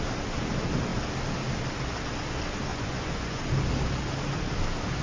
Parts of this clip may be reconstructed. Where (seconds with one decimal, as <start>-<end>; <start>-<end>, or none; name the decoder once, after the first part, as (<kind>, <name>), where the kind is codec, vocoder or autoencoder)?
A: 2.7-3.4 (vocoder, Vocos)